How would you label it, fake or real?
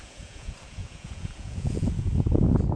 fake